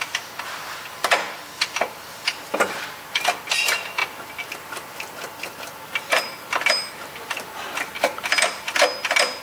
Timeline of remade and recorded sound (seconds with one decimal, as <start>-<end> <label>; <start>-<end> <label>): 0.0-4.0 recorded; 4.0-7.5 remade; 7.5-9.4 recorded